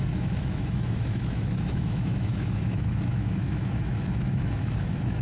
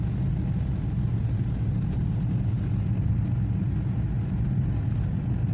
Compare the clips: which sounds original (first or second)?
second